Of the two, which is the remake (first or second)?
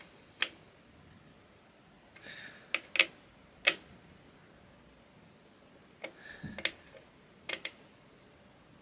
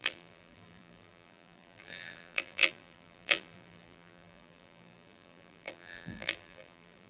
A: second